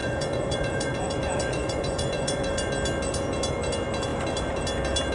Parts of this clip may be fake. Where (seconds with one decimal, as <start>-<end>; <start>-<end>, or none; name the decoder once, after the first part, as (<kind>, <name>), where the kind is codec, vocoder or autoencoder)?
0.0-2.7 (vocoder, Vocos)